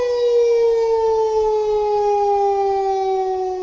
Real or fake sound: real